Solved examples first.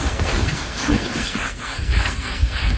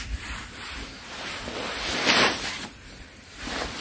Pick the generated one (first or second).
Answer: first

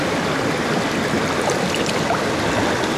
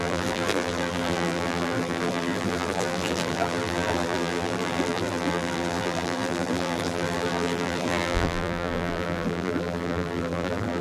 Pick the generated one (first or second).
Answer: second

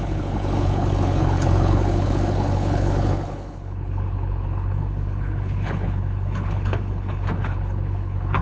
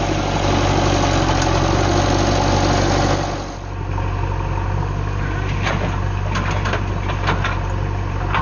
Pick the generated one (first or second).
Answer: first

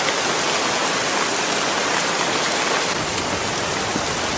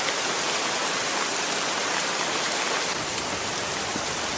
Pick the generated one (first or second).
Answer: second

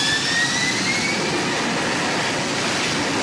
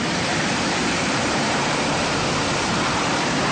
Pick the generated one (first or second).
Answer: second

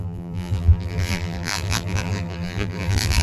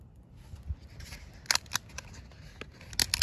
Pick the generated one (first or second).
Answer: first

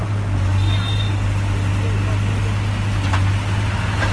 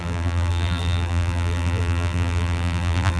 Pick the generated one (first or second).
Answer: second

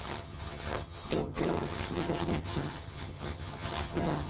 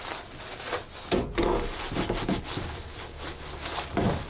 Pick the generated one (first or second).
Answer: first